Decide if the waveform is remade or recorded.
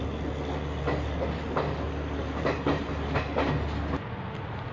recorded